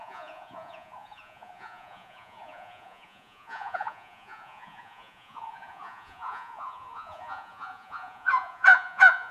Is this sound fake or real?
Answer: fake